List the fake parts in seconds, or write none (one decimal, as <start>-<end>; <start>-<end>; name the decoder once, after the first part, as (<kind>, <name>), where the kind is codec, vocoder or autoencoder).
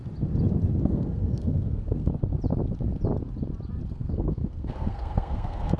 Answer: 0.8-2.1 (codec, SNAC); 3.9-5.8